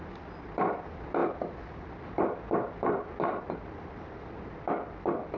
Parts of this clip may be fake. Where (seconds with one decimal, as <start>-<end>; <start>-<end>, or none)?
none